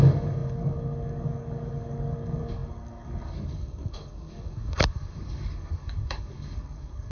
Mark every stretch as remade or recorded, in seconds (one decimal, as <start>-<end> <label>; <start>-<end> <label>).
0.0-7.1 remade